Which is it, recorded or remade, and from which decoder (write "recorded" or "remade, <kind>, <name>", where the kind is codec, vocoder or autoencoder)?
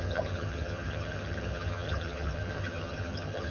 remade, vocoder, HiFi-GAN